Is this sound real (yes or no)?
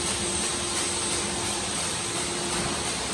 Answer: yes